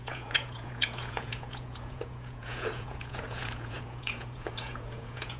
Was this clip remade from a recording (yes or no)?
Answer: yes